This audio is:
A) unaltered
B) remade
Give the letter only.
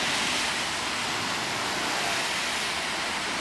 A